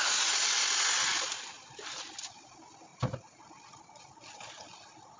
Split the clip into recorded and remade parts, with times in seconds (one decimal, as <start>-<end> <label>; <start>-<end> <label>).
0.0-5.2 recorded

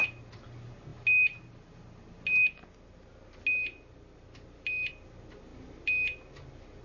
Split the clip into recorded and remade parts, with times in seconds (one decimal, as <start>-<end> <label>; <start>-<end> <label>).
0.0-6.8 recorded